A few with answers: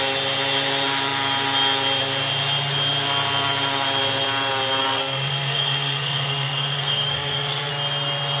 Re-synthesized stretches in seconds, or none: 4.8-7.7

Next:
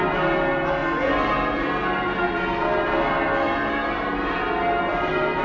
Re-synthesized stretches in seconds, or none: none

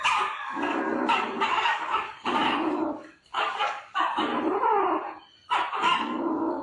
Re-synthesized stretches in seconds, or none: 0.0-4.3; 5.7-6.6

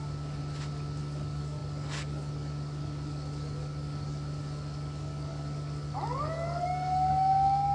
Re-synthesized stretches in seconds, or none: 0.0-0.4; 1.0-7.7

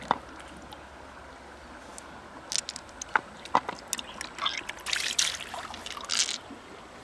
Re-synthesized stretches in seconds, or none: none

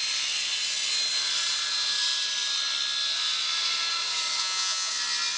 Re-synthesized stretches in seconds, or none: 4.4-4.9